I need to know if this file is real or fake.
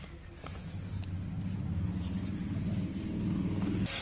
real